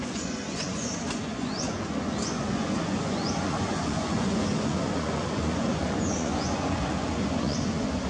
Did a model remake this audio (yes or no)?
yes